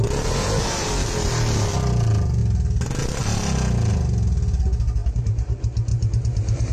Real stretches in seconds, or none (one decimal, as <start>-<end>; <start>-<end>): 0.0-5.0; 5.5-5.9